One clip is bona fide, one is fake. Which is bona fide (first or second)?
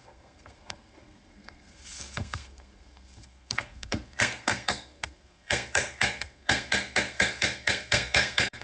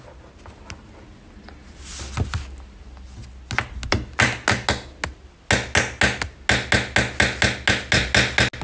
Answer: second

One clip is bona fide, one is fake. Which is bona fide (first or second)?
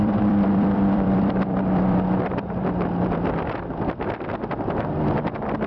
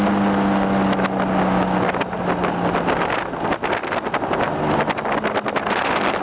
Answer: second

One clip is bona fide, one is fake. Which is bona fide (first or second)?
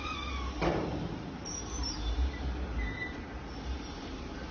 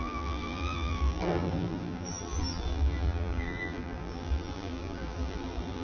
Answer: first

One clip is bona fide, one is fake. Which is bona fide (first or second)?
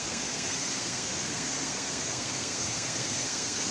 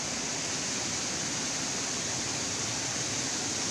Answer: second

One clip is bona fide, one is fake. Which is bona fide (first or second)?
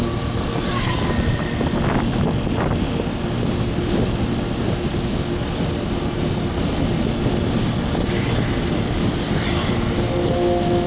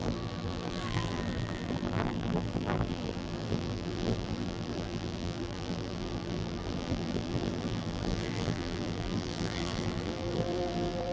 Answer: first